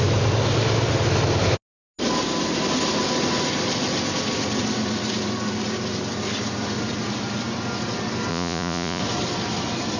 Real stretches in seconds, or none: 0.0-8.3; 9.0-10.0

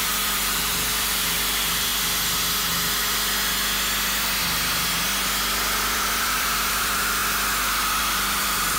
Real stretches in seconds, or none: 1.9-5.3; 7.2-8.0